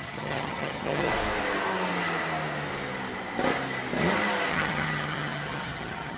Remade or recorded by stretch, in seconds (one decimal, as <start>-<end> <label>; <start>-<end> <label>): 0.0-1.1 remade; 1.1-4.5 recorded; 4.5-6.2 remade